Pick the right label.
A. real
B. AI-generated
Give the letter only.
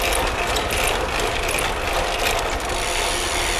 A